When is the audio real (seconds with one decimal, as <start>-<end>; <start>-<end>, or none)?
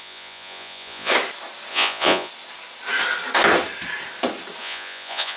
1.1-1.7; 2.3-4.6